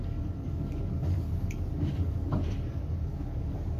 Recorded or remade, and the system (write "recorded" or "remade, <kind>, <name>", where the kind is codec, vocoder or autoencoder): remade, codec, DAC